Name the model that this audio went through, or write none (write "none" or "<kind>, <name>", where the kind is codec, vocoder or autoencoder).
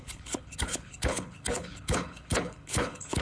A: codec, HILCodec